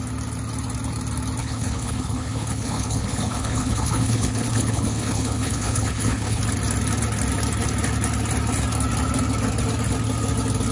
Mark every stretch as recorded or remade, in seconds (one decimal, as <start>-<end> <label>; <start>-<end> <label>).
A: 0.0-1.4 recorded; 1.4-6.4 remade; 6.4-10.7 recorded